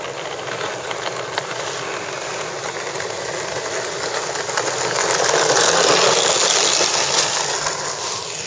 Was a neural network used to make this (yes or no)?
no